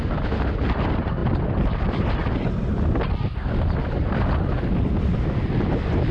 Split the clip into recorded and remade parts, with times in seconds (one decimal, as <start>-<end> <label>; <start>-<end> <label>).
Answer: 0.0-6.1 recorded